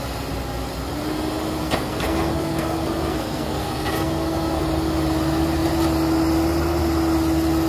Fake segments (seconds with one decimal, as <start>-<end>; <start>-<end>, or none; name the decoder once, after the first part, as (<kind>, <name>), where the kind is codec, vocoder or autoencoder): 1.6-4.6 (codec, SNAC)